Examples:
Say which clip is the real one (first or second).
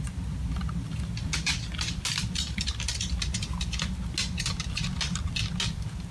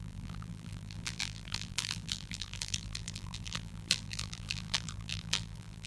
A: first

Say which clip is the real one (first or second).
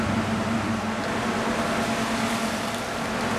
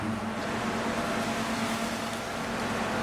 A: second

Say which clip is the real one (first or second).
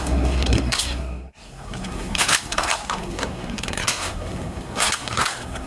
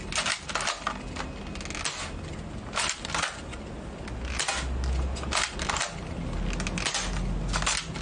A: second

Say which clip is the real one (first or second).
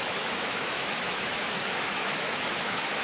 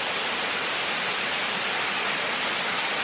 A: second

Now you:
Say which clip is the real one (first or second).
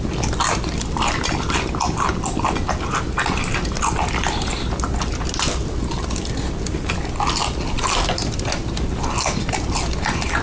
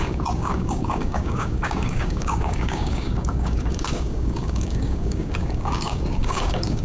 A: first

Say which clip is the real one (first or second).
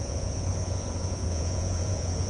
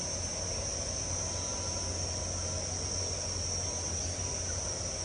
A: second